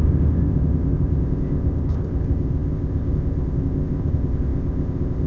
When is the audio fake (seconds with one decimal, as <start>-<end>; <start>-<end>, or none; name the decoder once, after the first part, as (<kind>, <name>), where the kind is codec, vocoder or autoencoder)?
0.0-5.3 (codec, ZipCodec)